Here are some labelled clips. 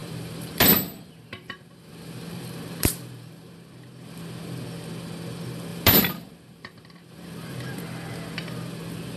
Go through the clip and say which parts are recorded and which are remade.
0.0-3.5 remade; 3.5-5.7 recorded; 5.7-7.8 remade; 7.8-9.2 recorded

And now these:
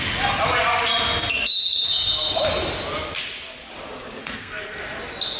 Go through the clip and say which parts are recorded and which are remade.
0.0-4.2 recorded; 4.2-4.8 remade; 4.8-5.4 recorded

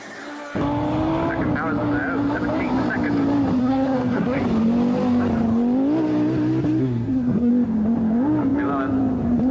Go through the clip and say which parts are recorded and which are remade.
0.0-3.6 recorded; 3.6-4.4 remade; 4.4-6.8 recorded; 6.8-7.5 remade; 7.5-9.5 recorded

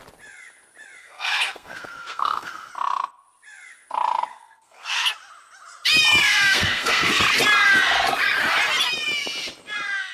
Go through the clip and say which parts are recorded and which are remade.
0.0-1.0 recorded; 1.0-2.7 remade; 2.7-4.3 recorded; 4.3-5.1 remade; 5.1-6.2 recorded; 6.2-7.2 remade; 7.2-10.1 recorded

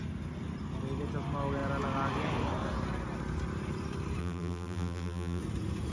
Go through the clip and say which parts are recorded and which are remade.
0.0-4.2 recorded; 4.2-5.4 remade; 5.4-5.9 recorded